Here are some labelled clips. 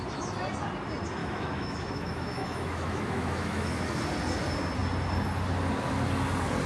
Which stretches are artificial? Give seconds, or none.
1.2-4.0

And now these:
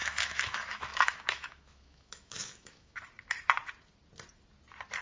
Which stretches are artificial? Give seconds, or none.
0.0-3.0

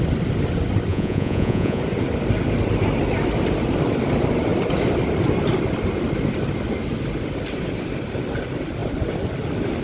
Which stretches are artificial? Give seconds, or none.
0.9-1.8

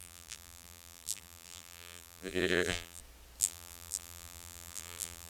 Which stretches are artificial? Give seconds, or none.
0.0-3.0; 3.4-5.3

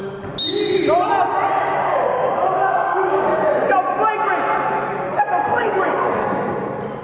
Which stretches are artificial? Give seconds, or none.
1.9-3.3; 5.2-6.2

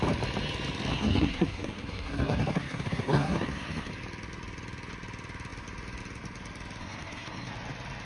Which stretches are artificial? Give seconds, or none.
0.9-3.9; 6.8-7.5